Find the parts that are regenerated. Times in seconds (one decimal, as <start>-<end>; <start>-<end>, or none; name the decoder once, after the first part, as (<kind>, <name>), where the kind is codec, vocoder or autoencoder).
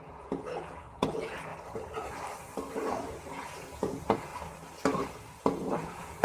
0.0-1.5 (vocoder, Vocos); 2.9-4.3; 5.4-6.2